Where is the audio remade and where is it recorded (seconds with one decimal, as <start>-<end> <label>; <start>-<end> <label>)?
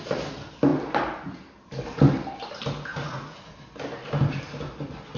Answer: 0.0-2.9 recorded; 2.9-3.5 remade; 3.5-5.2 recorded